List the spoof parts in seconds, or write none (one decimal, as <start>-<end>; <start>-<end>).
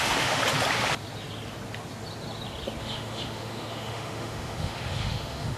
0.0-0.4; 2.8-5.6